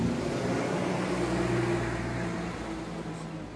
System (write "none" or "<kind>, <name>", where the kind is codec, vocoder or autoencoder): none